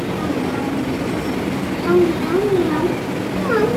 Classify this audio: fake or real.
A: real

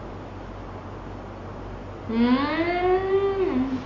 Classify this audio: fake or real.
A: real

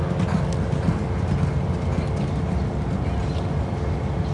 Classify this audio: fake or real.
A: real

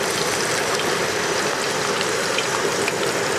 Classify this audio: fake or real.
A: real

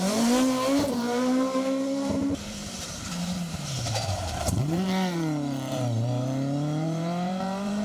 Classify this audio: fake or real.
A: fake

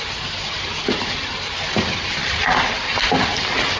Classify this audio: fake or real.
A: real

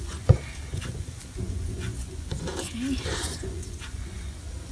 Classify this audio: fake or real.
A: fake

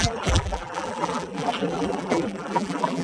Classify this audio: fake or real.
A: fake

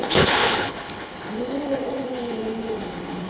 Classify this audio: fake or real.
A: fake